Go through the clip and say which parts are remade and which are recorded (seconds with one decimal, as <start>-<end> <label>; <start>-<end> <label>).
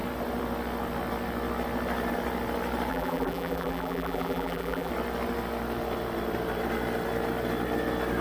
0.0-2.9 recorded; 2.9-4.9 remade; 4.9-8.2 recorded